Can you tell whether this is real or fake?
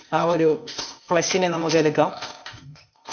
fake